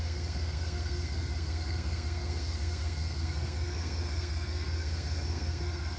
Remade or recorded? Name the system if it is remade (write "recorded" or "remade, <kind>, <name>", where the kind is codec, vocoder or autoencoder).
remade, codec, SNAC